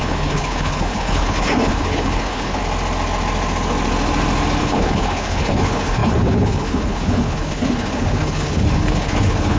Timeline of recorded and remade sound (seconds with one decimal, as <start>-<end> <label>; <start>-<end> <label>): 0.0-2.6 remade; 2.6-4.6 recorded; 4.6-9.6 remade